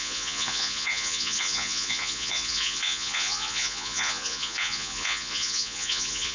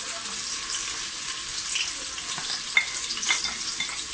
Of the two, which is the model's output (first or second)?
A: first